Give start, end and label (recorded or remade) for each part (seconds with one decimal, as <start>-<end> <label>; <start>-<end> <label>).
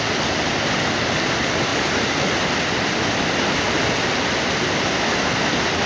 0.0-5.9 recorded